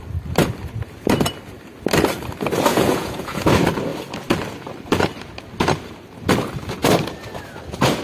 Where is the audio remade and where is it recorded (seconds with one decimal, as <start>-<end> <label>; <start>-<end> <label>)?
0.0-2.7 recorded; 2.7-3.5 remade; 3.5-8.0 recorded